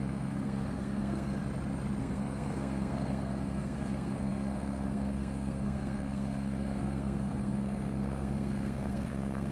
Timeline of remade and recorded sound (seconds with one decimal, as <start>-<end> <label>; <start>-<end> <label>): 0.0-1.4 remade; 1.4-2.0 recorded; 2.0-9.5 remade